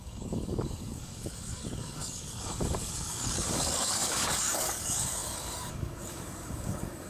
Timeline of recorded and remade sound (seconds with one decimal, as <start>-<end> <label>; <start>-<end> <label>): 0.0-7.1 remade